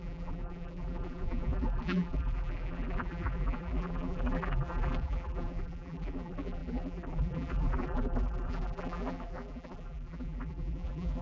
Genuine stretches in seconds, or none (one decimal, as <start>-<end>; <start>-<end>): none